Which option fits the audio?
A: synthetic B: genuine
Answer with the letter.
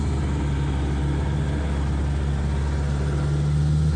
B